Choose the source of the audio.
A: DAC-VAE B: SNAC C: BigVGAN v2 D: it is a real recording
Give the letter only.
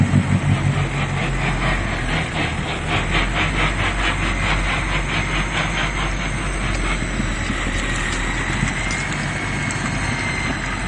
D